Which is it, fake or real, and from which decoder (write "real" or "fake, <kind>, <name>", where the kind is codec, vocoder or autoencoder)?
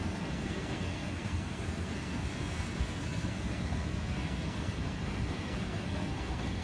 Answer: fake, codec, SNAC